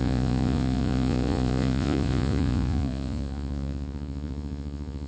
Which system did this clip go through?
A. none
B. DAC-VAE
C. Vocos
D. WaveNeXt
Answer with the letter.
C